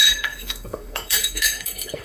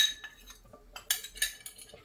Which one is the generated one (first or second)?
first